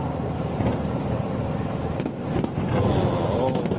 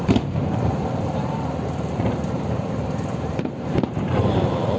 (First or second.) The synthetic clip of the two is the second